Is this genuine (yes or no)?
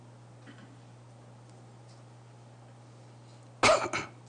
yes